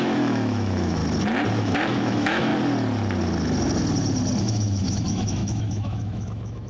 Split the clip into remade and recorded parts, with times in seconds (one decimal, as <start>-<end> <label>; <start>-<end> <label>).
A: 0.0-1.0 remade; 1.0-1.6 recorded; 1.6-2.5 remade; 2.5-4.4 recorded; 4.4-6.7 remade

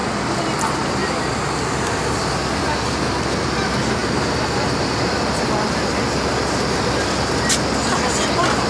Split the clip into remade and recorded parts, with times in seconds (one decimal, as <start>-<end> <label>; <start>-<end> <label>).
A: 0.0-8.7 recorded

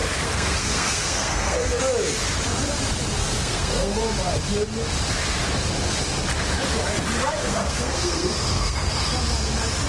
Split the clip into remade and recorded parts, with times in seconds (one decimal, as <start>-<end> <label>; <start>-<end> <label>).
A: 0.0-1.8 remade; 1.8-3.2 recorded; 3.2-4.0 remade; 4.0-7.4 recorded; 7.4-8.9 remade; 8.9-9.9 recorded

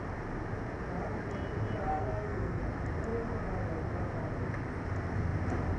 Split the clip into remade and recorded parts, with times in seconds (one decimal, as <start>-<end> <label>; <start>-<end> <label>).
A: 0.0-1.9 recorded; 1.9-2.6 remade; 2.6-5.8 recorded

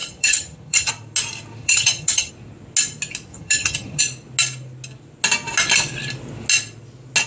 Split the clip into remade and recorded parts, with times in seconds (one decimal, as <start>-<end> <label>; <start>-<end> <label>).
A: 0.0-0.9 remade; 0.9-1.6 recorded; 1.6-2.3 remade; 2.3-3.3 recorded; 3.3-4.0 remade; 4.0-7.3 recorded

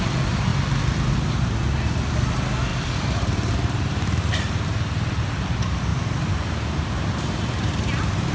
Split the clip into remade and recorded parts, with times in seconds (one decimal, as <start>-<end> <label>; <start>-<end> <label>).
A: 0.0-2.7 recorded; 2.7-4.2 remade; 4.2-5.9 recorded; 5.9-7.0 remade; 7.0-8.3 recorded

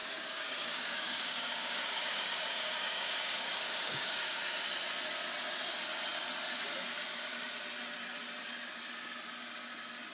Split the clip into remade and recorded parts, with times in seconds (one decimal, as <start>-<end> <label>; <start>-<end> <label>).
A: 0.0-4.6 remade; 4.6-10.1 recorded

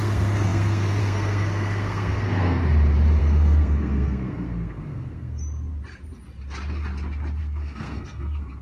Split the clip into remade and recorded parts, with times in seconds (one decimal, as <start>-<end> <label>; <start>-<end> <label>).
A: 0.0-2.6 remade; 2.6-3.2 recorded; 3.2-5.4 remade; 5.4-7.4 recorded; 7.4-8.6 remade